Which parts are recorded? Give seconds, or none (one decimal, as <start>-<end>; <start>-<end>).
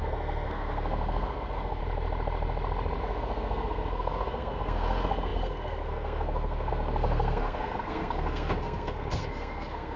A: 1.8-3.0